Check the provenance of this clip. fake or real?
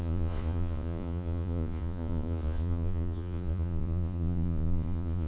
fake